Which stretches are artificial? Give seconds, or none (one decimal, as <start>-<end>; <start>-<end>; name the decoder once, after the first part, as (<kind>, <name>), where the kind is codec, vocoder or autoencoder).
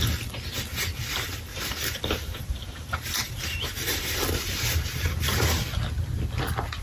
1.5-5.6 (vocoder, BigVGAN v2)